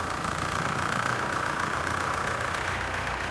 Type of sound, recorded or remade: remade